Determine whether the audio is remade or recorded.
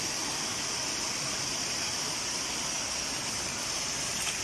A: recorded